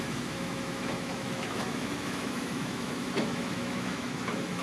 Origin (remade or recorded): remade